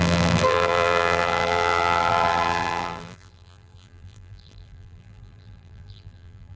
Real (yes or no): no